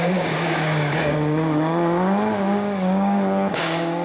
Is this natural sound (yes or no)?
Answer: no